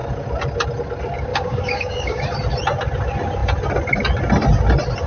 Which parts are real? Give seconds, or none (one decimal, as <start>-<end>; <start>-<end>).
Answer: 0.0-1.3; 2.2-5.1